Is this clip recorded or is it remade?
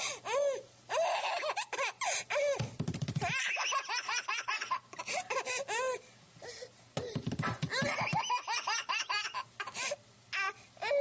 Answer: recorded